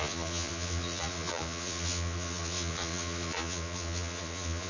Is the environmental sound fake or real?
fake